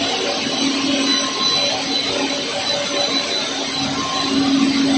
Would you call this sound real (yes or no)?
yes